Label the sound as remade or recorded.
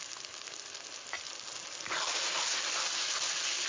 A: recorded